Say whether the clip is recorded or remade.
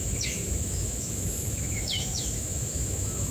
remade